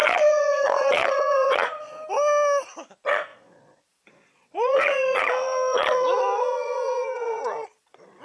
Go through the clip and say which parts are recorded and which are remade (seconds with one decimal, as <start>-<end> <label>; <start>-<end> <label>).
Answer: 0.0-1.9 remade; 1.9-3.3 recorded; 3.3-8.2 remade